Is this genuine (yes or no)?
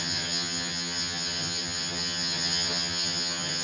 no